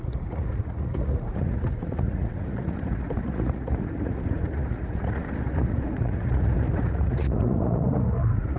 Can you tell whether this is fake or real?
fake